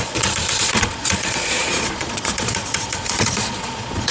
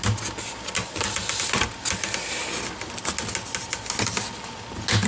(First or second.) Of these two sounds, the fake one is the first